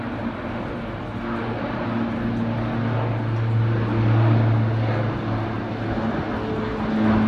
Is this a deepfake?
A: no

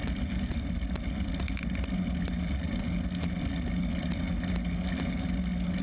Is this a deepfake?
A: no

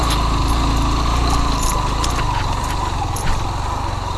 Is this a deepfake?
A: no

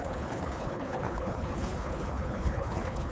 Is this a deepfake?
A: yes